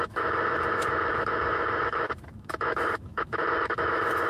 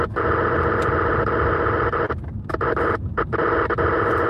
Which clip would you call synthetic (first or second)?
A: first